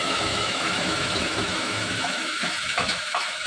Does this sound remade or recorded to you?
remade